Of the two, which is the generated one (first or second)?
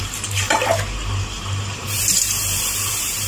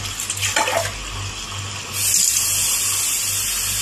first